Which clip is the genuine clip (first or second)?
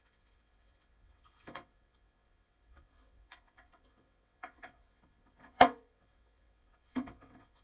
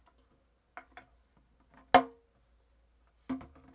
second